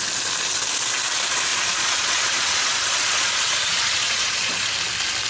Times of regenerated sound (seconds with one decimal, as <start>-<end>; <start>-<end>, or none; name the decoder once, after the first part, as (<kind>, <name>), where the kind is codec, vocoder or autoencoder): 1.5-4.7 (vocoder, Vocos)